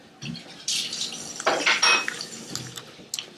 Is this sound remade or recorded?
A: recorded